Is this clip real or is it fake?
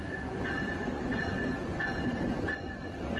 fake